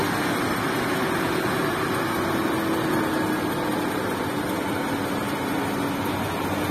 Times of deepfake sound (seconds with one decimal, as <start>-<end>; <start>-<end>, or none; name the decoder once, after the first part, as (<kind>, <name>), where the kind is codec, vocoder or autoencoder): none